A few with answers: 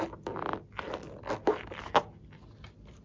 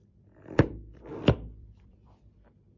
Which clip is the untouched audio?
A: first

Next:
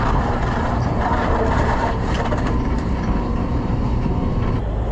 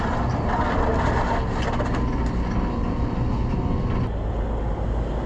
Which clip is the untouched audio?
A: second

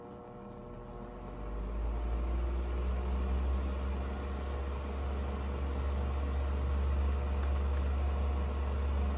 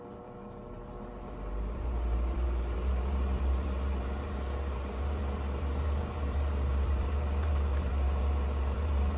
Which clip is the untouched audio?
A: first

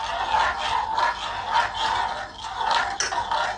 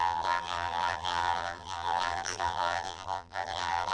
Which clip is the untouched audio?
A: first